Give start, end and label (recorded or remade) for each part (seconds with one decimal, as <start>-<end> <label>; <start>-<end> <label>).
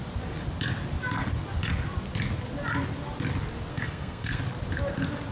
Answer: 0.0-3.7 recorded; 3.7-4.4 remade; 4.4-5.3 recorded